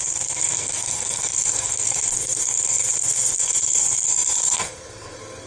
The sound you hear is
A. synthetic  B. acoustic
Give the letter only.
A